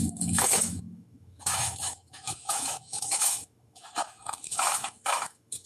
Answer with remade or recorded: remade